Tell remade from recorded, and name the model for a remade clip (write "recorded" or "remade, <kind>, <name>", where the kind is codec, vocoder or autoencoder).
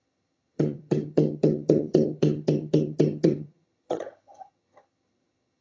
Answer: remade, vocoder, HiFi-GAN